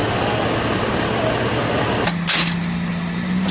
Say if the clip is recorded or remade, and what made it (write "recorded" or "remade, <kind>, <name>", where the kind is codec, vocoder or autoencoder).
recorded